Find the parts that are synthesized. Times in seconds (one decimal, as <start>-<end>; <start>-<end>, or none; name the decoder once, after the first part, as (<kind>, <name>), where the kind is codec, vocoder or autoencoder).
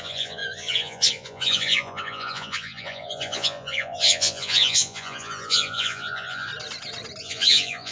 0.0-6.5 (vocoder, Vocos); 7.2-7.9